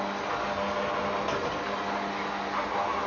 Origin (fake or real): real